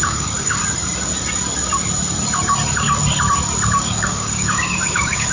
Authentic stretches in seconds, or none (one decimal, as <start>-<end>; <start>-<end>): 0.6-3.8